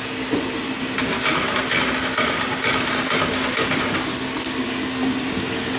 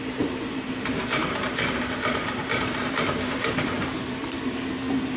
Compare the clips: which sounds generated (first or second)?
second